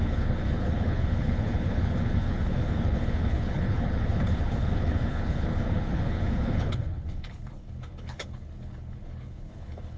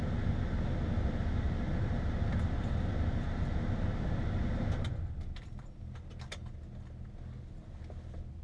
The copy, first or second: first